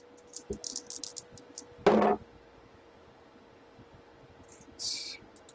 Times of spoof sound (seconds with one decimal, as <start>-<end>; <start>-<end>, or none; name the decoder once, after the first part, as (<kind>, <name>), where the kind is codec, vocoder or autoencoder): none